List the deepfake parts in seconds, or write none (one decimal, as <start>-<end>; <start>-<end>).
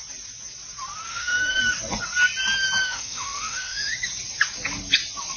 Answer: 1.1-1.6; 2.8-3.9